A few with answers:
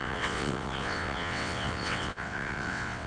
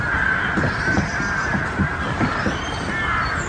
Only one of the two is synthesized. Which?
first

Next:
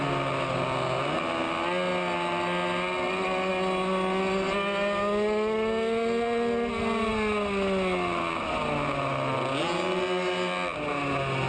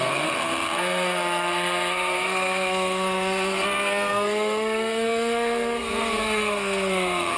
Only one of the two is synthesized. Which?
second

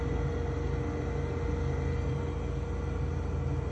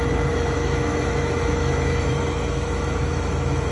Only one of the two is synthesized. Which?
second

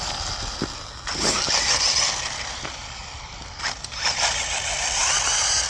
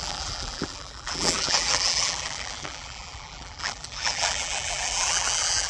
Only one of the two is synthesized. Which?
second